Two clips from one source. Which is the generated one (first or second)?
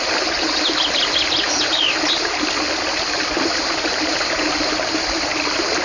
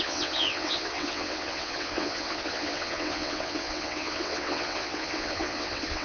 second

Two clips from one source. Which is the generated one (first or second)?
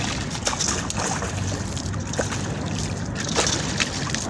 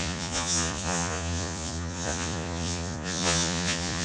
second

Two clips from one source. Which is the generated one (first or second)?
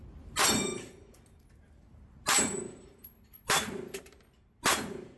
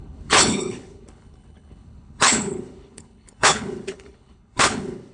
second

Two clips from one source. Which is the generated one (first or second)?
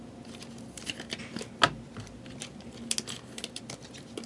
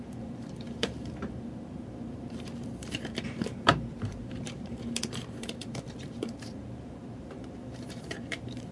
second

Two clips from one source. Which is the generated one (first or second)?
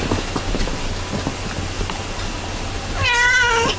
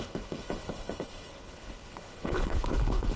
second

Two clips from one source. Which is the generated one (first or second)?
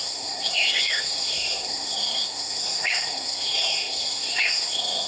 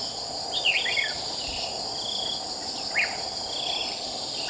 first